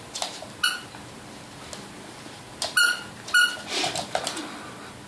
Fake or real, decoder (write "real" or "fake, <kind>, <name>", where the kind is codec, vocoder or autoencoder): real